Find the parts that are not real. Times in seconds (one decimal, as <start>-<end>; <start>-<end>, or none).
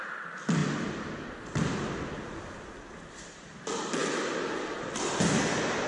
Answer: none